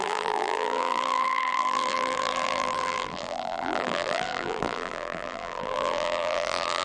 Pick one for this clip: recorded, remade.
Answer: remade